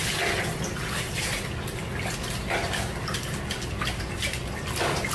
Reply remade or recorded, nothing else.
recorded